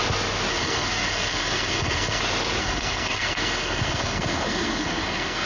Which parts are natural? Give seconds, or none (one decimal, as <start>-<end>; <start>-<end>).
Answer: 0.0-0.5; 2.2-2.6